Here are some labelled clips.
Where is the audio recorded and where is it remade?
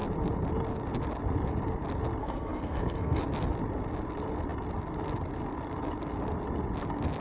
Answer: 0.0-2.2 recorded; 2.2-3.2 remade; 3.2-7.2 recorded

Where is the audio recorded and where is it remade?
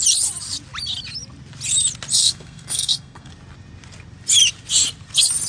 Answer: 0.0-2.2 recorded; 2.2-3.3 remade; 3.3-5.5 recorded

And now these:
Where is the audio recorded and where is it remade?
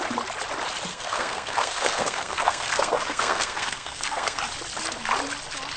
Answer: 0.0-0.9 recorded; 0.9-4.4 remade; 4.4-5.8 recorded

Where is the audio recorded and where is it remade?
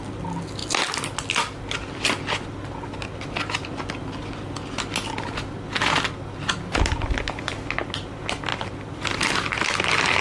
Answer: 0.0-10.2 recorded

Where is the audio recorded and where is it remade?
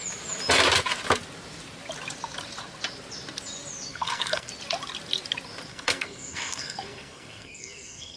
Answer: 0.0-3.9 recorded; 3.9-4.5 remade; 4.5-5.7 recorded; 5.7-8.2 remade